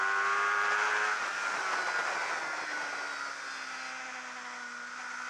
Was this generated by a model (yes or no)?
no